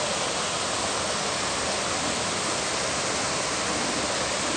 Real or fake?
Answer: real